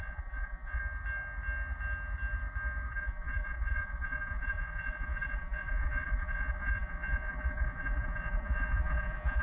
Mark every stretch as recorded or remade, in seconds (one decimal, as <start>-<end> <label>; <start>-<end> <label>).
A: 0.0-0.8 remade; 0.8-2.9 recorded; 2.9-9.4 remade